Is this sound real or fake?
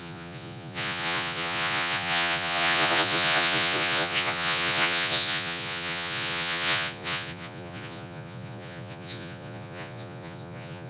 fake